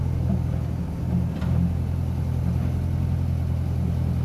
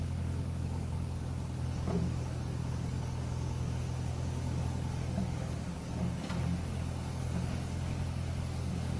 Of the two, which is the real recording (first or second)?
first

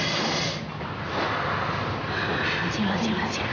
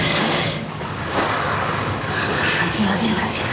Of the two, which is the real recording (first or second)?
first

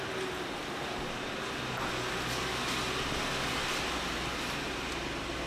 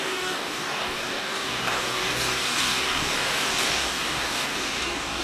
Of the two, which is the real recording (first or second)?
first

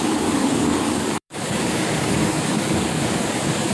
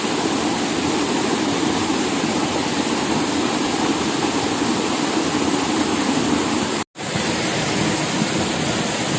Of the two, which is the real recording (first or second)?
second